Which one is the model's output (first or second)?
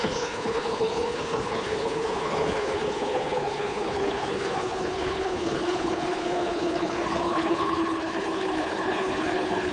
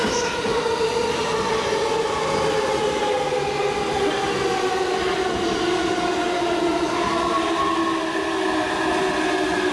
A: first